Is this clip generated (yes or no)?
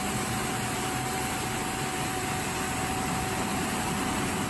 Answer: yes